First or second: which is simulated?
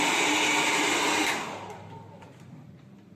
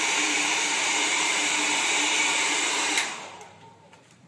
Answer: second